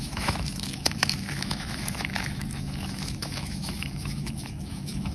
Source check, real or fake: fake